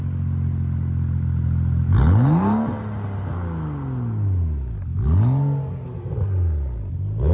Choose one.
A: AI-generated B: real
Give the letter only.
B